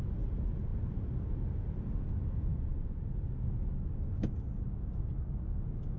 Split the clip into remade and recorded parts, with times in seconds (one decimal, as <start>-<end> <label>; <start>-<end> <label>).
0.0-6.0 recorded